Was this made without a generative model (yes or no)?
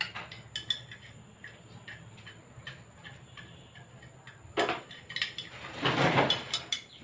yes